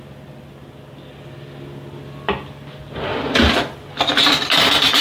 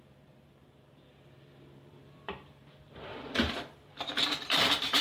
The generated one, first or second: second